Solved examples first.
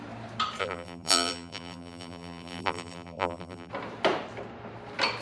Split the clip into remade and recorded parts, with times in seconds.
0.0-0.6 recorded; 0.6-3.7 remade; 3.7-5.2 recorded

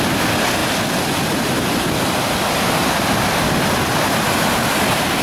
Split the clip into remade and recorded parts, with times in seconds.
0.0-0.6 recorded; 0.6-2.5 remade; 2.5-5.2 recorded

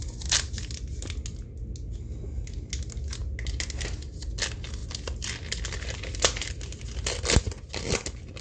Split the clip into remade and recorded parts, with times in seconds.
0.0-4.8 recorded; 4.8-6.2 remade; 6.2-8.4 recorded

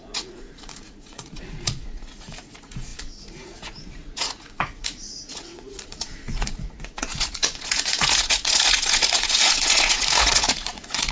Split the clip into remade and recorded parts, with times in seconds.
0.0-11.1 remade

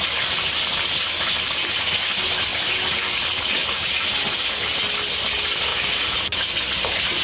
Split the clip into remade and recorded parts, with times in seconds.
0.0-3.6 recorded; 3.6-4.8 remade; 4.8-5.7 recorded; 5.7-6.2 remade; 6.2-7.2 recorded